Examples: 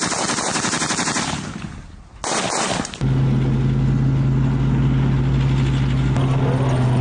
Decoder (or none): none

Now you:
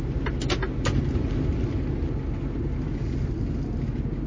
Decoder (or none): none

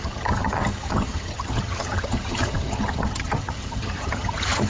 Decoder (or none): vocoder, HiFi-GAN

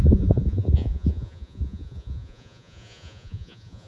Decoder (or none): vocoder, Vocos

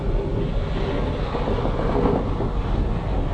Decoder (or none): none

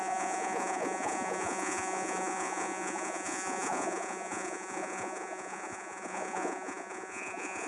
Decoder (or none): vocoder, Vocos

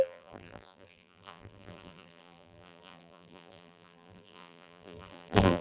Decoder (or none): vocoder, BigVGAN v2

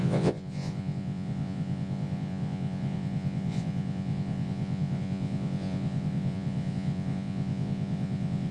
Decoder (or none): vocoder, Vocos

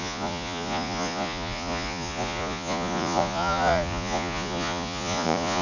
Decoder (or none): vocoder, Vocos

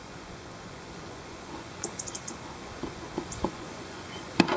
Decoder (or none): vocoder, Vocos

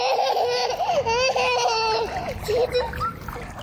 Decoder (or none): none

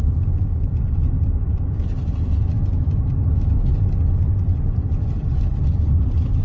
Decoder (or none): none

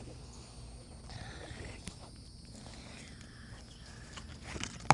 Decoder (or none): none